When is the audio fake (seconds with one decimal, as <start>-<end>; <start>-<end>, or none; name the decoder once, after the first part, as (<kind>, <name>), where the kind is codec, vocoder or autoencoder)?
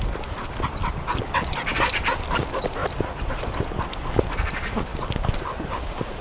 none